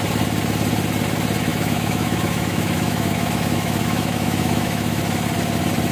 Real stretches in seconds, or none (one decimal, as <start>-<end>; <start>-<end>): 0.0-1.5; 5.0-5.9